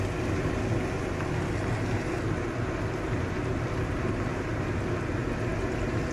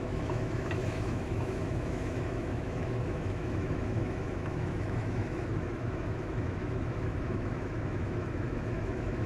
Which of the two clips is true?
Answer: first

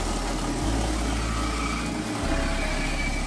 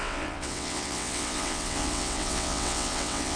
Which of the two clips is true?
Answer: first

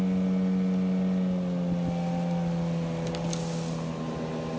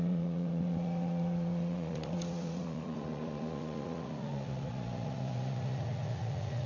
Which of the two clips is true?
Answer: first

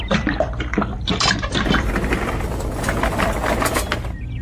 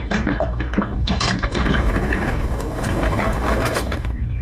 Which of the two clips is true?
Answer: first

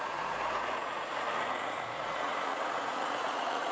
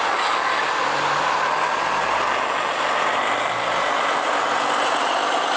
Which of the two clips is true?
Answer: second